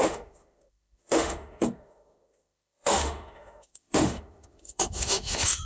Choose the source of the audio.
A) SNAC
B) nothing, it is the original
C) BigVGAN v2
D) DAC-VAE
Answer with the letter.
D